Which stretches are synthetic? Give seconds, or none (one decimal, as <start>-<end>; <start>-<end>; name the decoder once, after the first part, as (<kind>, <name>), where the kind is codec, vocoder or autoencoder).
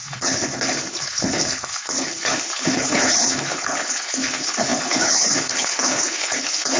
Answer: 0.0-6.8 (codec, HILCodec)